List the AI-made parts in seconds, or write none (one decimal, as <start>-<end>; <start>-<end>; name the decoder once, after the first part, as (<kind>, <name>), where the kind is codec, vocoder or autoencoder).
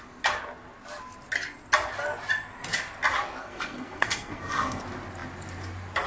3.4-4.8 (codec, SNAC)